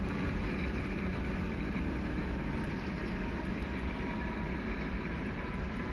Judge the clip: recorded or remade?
recorded